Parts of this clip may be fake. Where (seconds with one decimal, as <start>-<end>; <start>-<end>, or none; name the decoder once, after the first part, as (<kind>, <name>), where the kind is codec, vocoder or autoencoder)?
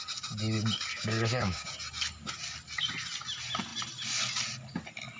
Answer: 0.9-1.7 (codec, DAC)